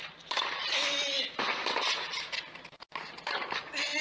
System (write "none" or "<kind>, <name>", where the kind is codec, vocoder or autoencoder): none